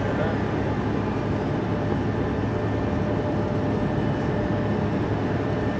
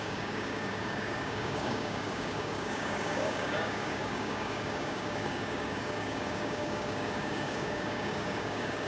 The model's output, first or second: second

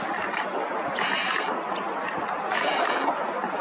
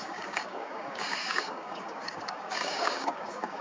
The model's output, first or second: second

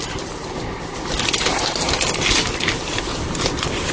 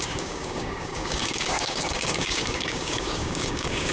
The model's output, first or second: second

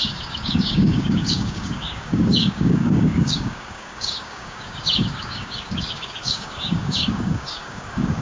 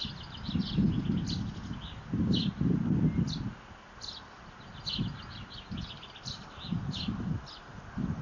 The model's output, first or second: first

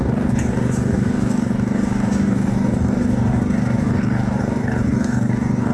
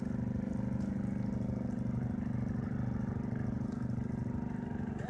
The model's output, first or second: first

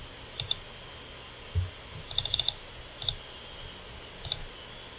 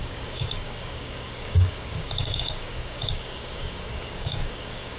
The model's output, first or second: second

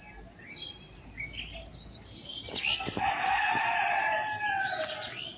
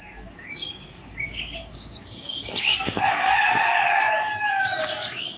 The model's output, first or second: second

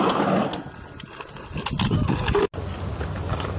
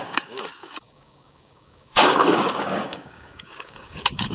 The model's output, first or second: second